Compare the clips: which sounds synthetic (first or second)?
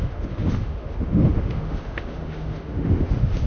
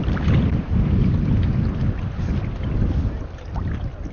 first